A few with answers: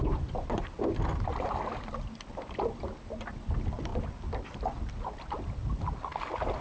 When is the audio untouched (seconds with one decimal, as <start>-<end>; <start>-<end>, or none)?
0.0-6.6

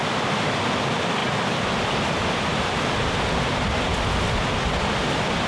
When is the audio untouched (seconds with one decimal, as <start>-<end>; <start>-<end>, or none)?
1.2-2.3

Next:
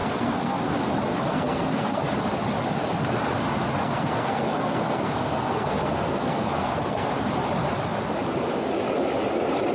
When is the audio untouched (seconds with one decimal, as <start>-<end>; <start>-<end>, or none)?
0.7-1.3; 2.1-3.8; 7.1-9.7